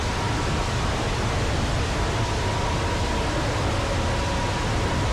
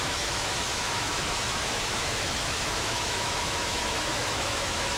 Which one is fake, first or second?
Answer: second